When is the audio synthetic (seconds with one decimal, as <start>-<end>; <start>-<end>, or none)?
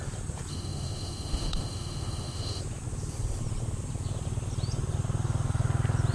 0.5-2.6